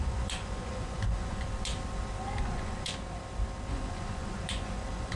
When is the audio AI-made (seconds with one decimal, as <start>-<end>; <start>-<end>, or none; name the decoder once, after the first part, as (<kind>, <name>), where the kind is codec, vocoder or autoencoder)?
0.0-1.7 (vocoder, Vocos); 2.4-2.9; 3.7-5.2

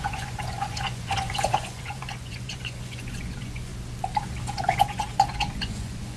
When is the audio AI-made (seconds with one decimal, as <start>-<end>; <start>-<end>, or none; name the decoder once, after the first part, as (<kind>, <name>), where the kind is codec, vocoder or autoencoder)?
0.0-3.7 (vocoder, Vocos); 4.4-6.2

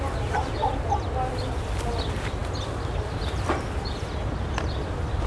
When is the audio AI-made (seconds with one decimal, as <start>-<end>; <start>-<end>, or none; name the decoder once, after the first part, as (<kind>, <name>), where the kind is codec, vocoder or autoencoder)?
none

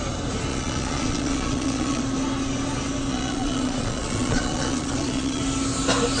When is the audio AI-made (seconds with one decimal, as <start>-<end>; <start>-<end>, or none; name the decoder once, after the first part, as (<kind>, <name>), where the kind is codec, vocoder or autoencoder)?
0.5-2.0 (vocoder, Vocos); 3.1-5.4

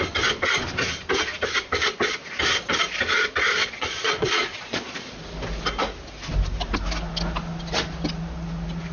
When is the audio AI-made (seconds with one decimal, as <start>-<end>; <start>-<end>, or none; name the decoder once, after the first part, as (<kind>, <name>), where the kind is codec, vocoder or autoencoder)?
3.6-5.0 (vocoder, Vocos)

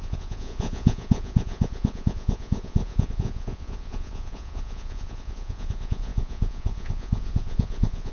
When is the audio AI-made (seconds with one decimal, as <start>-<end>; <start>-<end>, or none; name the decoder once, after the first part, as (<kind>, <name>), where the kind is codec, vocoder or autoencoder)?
0.0-8.1 (vocoder, Vocos)

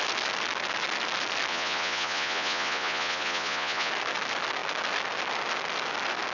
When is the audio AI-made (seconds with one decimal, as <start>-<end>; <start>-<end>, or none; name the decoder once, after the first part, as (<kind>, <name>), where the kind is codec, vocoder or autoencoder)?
1.5-3.9 (vocoder, Vocos)

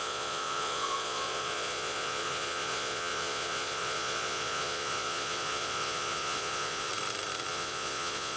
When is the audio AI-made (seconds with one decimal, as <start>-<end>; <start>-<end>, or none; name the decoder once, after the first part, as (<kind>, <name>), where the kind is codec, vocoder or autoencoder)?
0.0-6.9 (vocoder, Vocos); 7.5-8.4